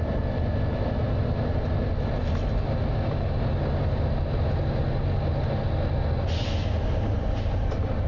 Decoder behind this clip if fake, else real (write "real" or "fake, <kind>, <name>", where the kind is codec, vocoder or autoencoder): real